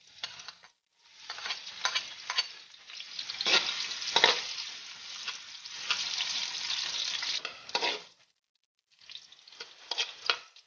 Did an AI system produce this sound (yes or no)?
no